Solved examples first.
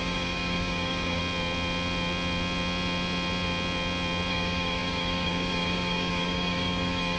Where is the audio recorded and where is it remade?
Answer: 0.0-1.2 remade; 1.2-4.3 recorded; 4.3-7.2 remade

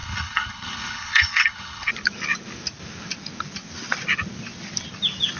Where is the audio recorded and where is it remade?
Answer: 0.0-1.9 remade; 1.9-5.4 recorded